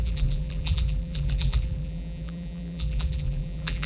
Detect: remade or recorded remade